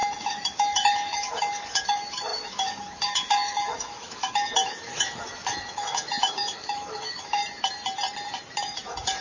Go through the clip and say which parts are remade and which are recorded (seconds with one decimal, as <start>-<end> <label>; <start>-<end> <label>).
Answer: 0.0-7.4 remade; 7.4-8.6 recorded; 8.6-9.2 remade